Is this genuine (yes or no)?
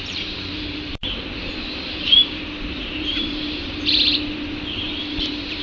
no